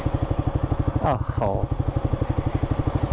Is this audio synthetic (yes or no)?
no